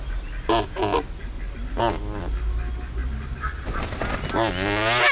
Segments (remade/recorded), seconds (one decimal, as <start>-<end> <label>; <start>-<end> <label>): 0.0-5.1 recorded